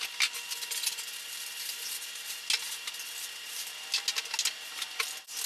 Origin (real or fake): real